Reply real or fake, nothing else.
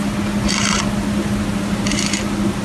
real